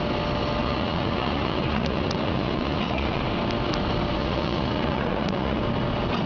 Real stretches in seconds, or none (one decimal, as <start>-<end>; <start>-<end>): 0.0-0.6; 3.2-4.2; 5.6-6.3